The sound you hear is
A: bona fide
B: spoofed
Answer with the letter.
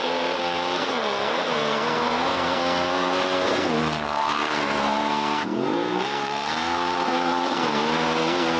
B